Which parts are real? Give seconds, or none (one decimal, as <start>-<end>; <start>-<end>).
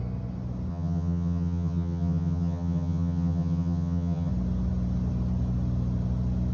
0.0-0.7; 4.3-6.5